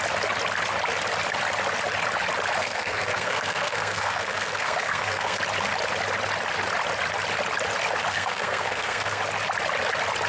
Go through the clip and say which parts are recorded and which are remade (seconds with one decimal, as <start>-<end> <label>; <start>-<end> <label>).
0.0-2.6 recorded; 2.6-5.4 remade; 5.4-8.1 recorded; 8.1-9.2 remade; 9.2-10.3 recorded